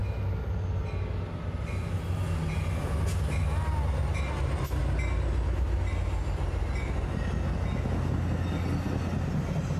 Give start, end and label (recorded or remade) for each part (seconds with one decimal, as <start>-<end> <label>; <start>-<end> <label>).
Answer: 0.0-9.8 recorded